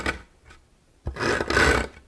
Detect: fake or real real